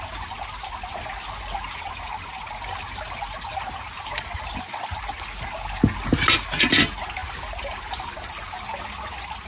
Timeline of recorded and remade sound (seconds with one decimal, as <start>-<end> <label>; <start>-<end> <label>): 0.0-9.5 recorded